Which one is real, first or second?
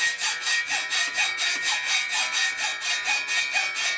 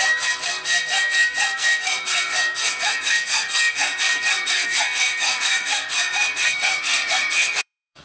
first